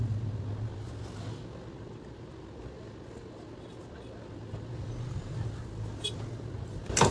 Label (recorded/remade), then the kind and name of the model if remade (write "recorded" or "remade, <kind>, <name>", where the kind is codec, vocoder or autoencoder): recorded